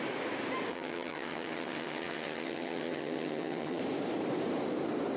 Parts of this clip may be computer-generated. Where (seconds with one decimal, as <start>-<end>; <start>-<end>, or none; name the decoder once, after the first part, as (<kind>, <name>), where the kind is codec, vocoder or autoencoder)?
0.7-3.8 (vocoder, HiFi-GAN)